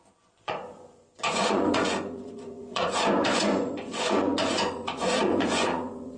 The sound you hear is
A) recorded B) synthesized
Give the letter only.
B